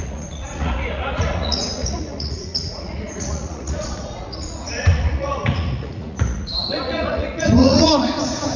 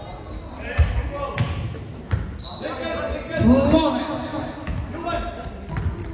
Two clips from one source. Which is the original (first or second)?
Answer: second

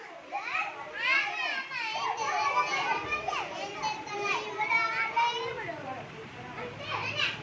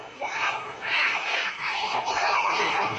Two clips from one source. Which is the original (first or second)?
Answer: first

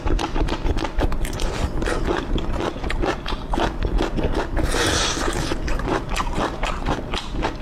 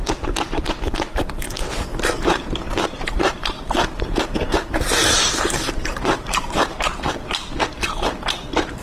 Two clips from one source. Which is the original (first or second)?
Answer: first